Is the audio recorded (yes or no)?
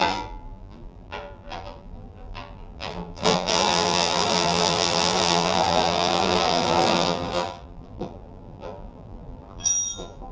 no